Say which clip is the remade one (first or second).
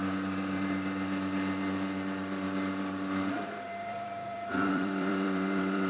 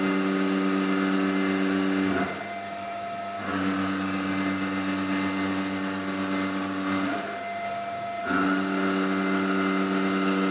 first